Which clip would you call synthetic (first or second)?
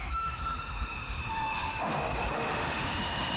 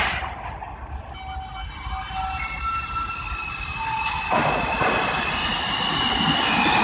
first